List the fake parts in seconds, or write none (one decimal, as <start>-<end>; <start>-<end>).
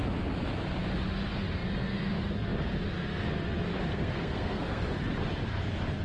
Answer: 3.9-4.8